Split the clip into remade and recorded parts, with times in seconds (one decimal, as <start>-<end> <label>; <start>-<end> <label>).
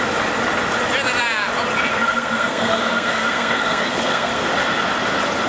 0.0-1.9 recorded; 1.9-4.5 remade; 4.5-5.5 recorded